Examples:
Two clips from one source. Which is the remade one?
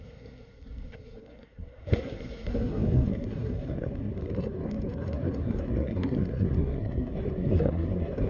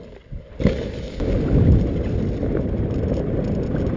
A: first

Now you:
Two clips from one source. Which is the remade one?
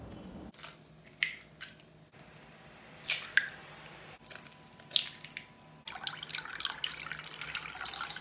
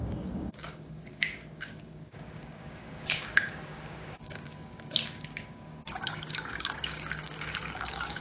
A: second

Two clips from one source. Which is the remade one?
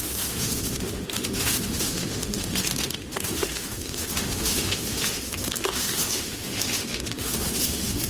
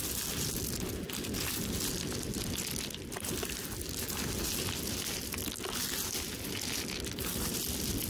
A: first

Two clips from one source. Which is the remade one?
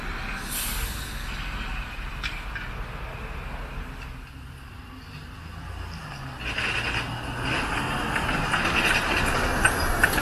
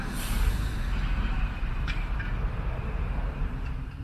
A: second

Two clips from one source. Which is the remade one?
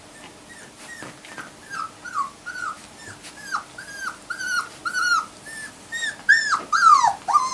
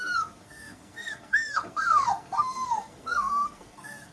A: second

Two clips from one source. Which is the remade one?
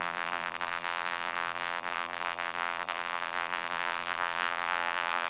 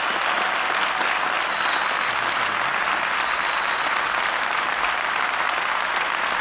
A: first